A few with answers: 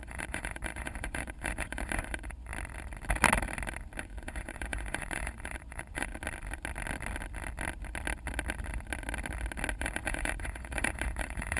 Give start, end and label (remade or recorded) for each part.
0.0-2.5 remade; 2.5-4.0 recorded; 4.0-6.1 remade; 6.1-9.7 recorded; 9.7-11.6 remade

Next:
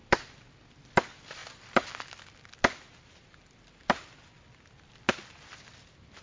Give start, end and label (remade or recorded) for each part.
0.0-6.2 recorded

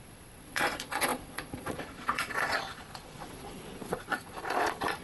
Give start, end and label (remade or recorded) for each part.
0.0-5.0 remade